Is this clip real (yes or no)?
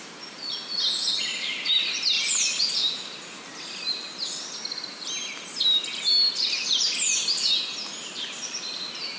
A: yes